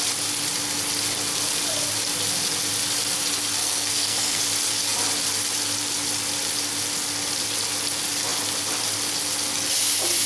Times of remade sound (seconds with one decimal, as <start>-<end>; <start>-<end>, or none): 3.6-4.4